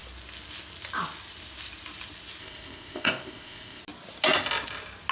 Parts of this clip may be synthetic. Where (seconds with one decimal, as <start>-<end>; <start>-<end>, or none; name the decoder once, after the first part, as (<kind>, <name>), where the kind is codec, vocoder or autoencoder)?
2.4-3.8 (codec, ZipCodec)